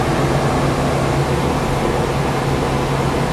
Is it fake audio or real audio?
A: real